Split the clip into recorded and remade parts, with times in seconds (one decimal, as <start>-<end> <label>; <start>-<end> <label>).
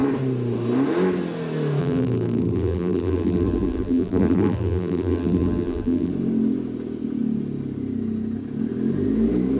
0.0-1.8 recorded; 1.8-6.1 remade; 6.1-9.6 recorded